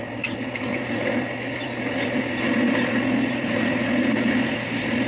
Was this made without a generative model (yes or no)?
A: yes